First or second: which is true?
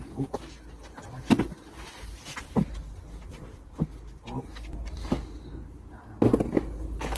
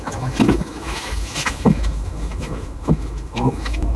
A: first